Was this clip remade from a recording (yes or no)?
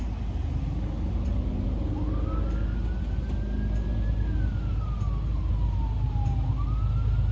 no